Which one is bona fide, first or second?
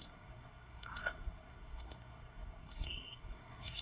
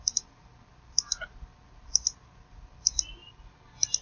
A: second